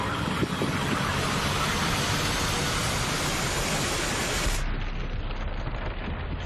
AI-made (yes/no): no